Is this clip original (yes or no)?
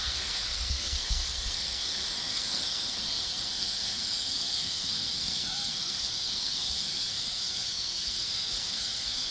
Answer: no